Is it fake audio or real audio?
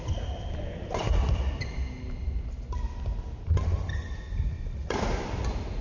real